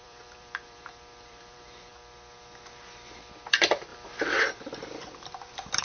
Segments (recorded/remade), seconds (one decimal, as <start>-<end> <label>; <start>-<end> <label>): 0.0-1.9 remade; 1.9-3.5 recorded; 3.5-3.9 remade; 3.9-4.4 recorded; 4.4-5.8 remade